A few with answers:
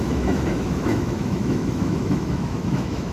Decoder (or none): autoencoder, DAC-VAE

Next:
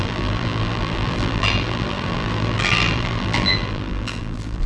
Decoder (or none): vocoder, BigVGAN v2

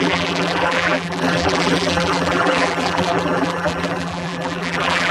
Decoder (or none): vocoder, BigVGAN v2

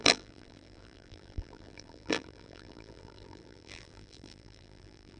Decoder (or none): vocoder, BigVGAN v2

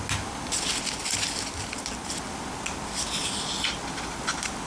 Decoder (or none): none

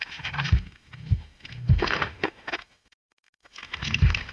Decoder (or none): autoencoder, DAC-VAE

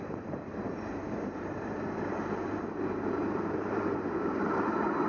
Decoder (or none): vocoder, BigVGAN v2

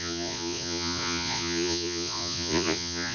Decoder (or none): vocoder, Vocos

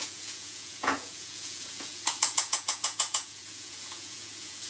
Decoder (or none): vocoder, Vocos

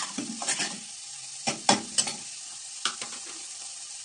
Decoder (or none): none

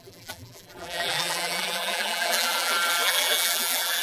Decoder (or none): vocoder, BigVGAN v2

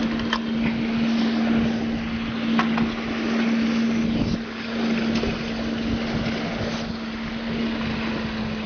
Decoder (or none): none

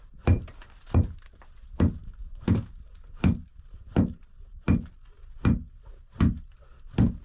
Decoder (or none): none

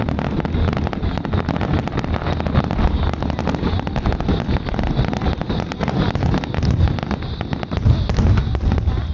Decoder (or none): none